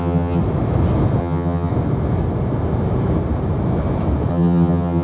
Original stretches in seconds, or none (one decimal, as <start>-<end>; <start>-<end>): 0.4-1.2; 1.7-4.3